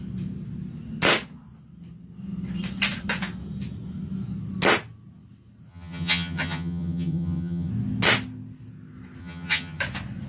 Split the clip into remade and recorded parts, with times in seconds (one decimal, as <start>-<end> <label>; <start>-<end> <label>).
0.0-5.7 recorded; 5.7-7.7 remade; 7.7-9.2 recorded; 9.2-9.8 remade; 9.8-10.3 recorded